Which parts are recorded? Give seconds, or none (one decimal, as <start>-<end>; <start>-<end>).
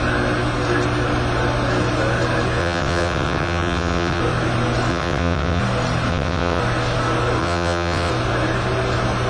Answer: 0.0-2.6; 4.2-4.9; 5.6-6.1; 6.6-7.4; 8.1-9.3